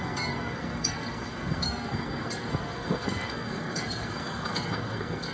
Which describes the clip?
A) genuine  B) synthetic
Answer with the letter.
B